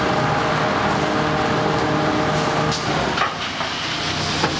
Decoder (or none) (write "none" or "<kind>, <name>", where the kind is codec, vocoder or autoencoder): none